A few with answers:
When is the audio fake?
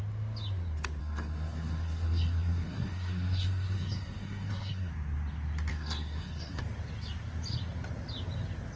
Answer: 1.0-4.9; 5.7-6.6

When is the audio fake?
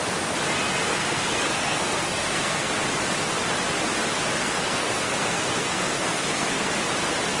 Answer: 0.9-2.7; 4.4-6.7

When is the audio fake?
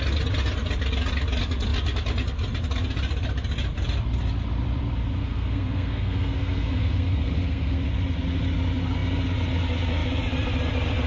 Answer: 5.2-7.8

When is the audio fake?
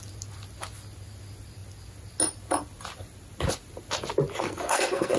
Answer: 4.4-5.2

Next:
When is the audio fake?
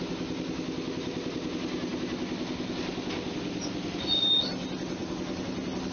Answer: none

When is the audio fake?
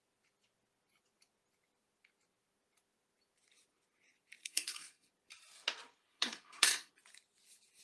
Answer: 4.4-5.1; 6.1-6.9